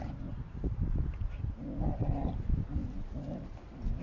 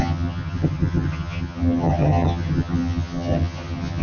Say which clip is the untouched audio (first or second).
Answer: first